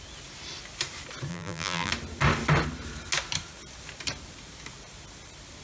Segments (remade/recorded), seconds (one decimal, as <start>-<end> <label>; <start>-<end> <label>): 0.0-1.3 recorded; 1.3-1.9 remade; 1.9-5.6 recorded